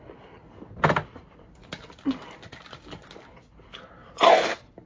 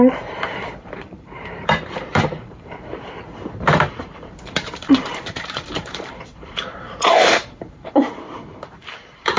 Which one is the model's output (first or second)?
second